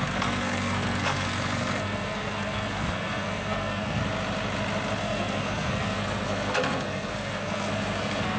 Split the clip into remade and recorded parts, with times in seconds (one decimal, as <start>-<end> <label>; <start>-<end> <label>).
0.0-4.0 remade; 4.0-5.0 recorded; 5.0-8.4 remade